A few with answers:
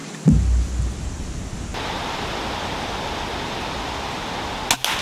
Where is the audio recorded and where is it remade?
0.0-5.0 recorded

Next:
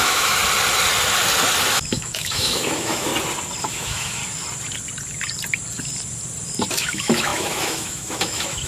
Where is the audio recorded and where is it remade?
0.0-0.4 remade; 0.4-1.7 recorded; 1.7-3.1 remade; 3.1-3.6 recorded; 3.6-4.2 remade; 4.2-6.7 recorded; 6.7-8.7 remade